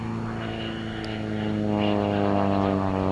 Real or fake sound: real